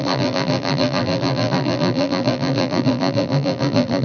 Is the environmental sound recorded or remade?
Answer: remade